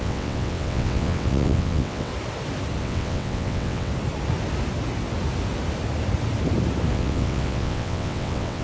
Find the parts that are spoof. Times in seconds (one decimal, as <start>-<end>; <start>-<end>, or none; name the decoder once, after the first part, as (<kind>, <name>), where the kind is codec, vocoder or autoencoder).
0.0-2.1 (vocoder, WaveNeXt); 2.8-3.9; 6.9-8.6